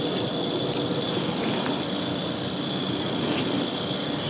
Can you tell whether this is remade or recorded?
recorded